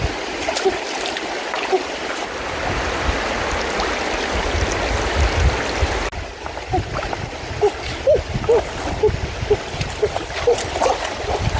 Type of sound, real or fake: real